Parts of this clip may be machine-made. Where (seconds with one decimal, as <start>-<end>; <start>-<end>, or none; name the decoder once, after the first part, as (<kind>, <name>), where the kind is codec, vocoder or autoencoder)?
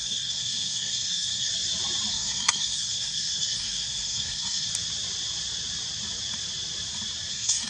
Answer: 0.0-1.5 (codec, SNAC); 2.1-4.7; 7.3-7.7